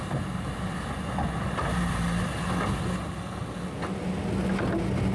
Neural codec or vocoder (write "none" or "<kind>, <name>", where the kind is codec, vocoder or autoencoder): none